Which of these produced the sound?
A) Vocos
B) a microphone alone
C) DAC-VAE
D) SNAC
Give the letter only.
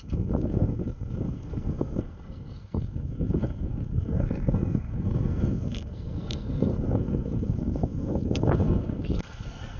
D